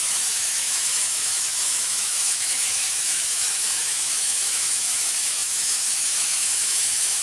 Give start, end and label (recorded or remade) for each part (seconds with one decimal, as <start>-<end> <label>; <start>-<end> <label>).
0.0-7.2 remade